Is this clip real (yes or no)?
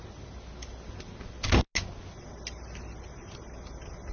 yes